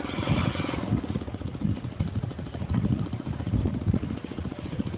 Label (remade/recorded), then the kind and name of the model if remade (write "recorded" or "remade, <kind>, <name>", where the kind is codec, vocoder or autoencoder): remade, vocoder, Vocos